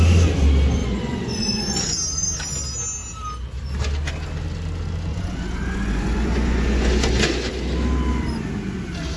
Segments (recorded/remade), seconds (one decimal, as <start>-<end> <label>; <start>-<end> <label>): 0.0-0.8 recorded; 0.8-1.9 remade; 1.9-5.1 recorded; 5.1-7.5 remade; 7.5-9.2 recorded